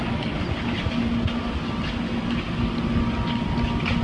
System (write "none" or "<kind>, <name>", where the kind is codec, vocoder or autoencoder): none